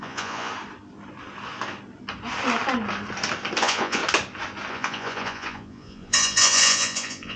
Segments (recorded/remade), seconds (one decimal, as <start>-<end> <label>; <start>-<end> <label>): 0.0-0.5 remade; 0.5-3.6 recorded; 3.6-4.0 remade; 4.0-4.7 recorded; 4.7-7.4 remade